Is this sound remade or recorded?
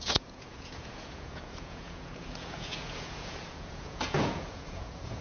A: remade